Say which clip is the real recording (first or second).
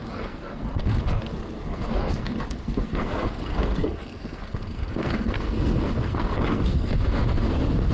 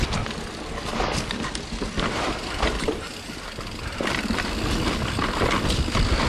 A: second